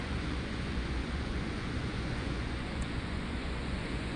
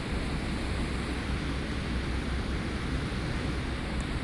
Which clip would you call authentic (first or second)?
second